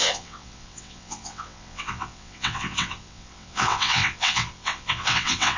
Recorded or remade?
remade